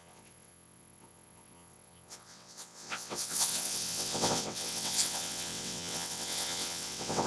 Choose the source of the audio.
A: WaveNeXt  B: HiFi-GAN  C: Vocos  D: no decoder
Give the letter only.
A